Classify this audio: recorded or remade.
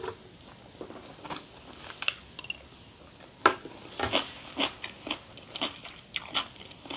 recorded